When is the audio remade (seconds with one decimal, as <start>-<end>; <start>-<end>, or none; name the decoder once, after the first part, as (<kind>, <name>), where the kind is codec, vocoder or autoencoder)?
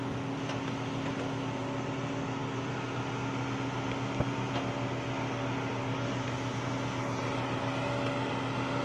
none